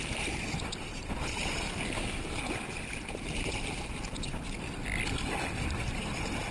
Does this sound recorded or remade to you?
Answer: recorded